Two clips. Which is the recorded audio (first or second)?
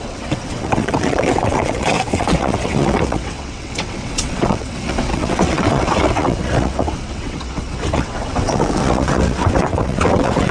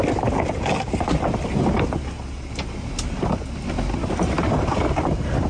second